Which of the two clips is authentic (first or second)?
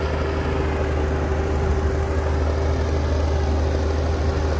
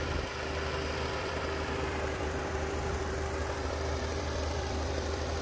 first